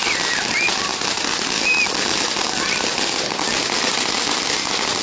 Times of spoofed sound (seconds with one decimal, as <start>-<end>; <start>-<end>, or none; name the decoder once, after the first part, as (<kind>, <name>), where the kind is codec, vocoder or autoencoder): none